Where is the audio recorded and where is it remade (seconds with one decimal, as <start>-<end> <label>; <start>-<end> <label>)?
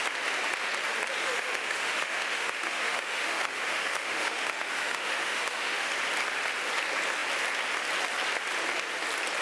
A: 0.0-1.2 recorded; 1.2-5.9 remade; 5.9-9.4 recorded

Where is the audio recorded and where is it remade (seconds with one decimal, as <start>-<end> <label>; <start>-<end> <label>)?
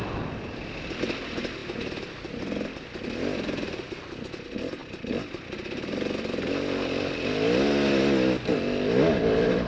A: 0.0-9.7 recorded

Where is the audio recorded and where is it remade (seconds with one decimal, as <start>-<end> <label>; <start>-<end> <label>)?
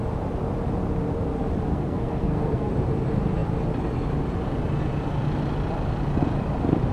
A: 0.0-1.7 recorded; 1.7-2.7 remade; 2.7-6.9 recorded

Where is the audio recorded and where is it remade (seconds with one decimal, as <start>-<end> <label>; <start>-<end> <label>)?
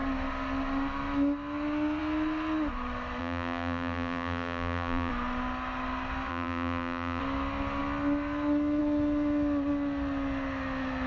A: 0.0-3.2 recorded; 3.2-5.1 remade; 5.1-6.3 recorded; 6.3-7.2 remade; 7.2-11.1 recorded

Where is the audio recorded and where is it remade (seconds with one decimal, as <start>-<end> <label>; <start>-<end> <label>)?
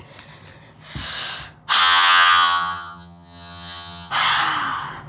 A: 0.0-1.8 recorded; 1.8-4.1 remade; 4.1-5.1 recorded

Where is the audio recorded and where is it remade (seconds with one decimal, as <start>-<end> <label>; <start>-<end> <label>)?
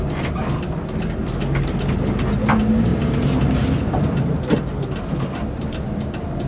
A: 0.0-6.5 recorded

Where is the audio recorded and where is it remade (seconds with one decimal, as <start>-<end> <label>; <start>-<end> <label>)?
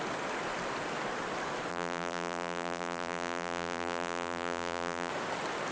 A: 0.0-1.7 recorded; 1.7-5.1 remade; 5.1-5.7 recorded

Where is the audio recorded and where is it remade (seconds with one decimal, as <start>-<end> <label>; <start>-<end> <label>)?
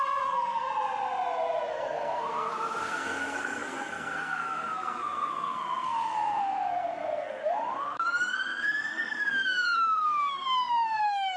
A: 0.0-0.7 remade; 0.7-1.7 recorded; 1.7-11.4 remade